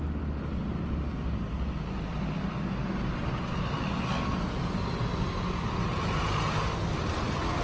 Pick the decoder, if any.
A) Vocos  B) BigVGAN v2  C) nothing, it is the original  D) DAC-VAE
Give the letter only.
C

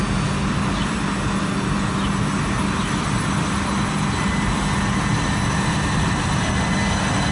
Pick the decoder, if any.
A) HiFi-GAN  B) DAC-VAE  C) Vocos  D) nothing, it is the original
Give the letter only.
D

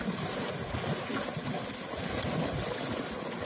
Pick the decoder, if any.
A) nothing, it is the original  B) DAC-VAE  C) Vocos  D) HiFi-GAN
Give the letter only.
A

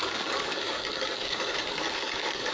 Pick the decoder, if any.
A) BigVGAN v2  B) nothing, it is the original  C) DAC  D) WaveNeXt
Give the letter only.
C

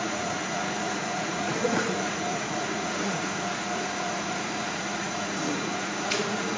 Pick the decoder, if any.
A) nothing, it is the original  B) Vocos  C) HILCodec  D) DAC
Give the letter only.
B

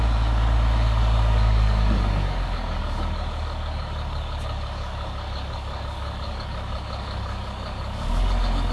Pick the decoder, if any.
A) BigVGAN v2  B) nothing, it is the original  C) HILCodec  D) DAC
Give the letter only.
D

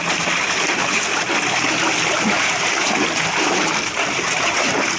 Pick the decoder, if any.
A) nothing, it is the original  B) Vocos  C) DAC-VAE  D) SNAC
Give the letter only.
A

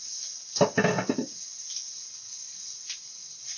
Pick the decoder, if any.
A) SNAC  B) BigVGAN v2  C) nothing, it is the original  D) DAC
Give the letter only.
C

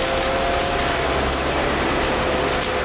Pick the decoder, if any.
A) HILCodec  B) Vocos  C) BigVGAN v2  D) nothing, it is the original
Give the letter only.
D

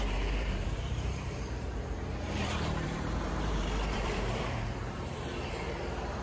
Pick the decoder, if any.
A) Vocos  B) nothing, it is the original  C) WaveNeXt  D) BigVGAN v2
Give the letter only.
D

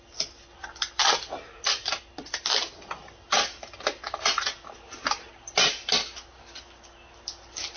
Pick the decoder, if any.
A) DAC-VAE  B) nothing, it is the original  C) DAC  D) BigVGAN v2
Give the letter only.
B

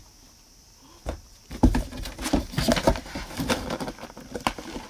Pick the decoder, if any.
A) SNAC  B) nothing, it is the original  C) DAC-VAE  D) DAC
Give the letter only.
B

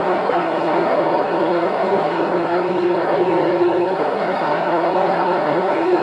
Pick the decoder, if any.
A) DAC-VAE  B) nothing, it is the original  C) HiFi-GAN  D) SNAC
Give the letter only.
D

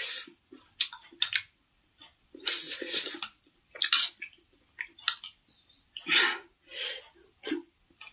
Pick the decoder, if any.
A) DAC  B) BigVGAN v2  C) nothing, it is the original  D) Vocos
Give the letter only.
C